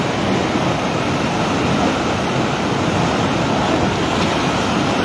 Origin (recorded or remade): recorded